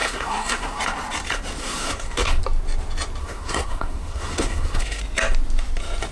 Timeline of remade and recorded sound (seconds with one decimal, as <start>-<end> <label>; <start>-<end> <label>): 0.0-0.8 remade; 0.8-1.6 recorded; 1.6-2.4 remade; 2.4-3.2 recorded; 3.2-5.0 remade; 5.0-6.1 recorded